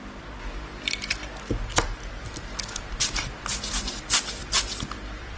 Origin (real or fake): fake